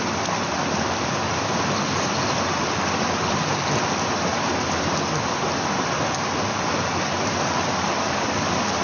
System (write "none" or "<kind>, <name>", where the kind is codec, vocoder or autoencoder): none